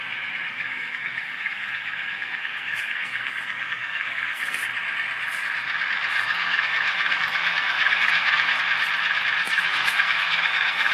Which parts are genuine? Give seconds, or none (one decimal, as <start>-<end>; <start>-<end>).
0.0-0.5; 4.6-6.2; 8.6-9.4